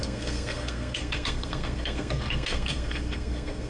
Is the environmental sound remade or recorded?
remade